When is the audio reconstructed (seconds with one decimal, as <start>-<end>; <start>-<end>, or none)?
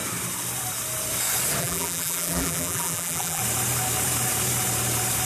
1.6-3.4